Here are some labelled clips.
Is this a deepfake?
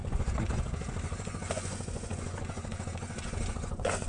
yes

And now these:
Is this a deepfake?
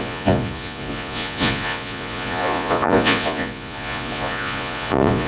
yes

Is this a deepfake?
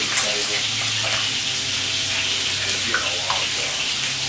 no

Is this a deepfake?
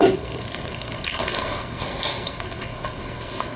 yes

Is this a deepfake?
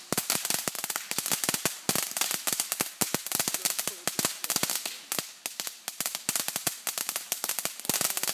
no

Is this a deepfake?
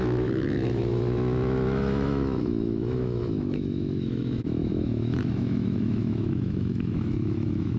yes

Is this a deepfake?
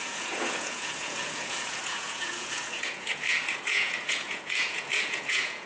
yes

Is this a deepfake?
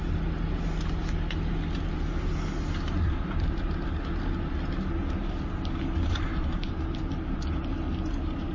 no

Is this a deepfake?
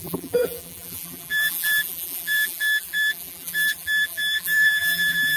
yes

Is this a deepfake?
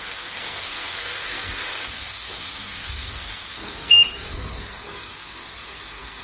yes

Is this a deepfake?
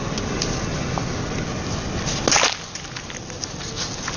no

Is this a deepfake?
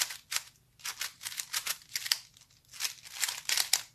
no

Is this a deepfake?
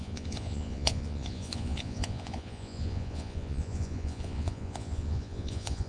yes